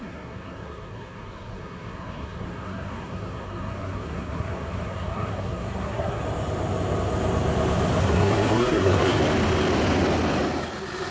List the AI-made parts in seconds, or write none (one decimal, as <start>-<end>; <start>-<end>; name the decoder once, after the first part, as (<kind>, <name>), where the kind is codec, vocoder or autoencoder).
0.0-6.2 (codec, SNAC); 8.0-9.2